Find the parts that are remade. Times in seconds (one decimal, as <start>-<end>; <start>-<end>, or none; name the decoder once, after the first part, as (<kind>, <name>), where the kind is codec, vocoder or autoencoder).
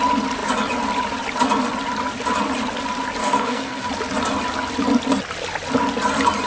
3.2-3.9 (codec, SNAC)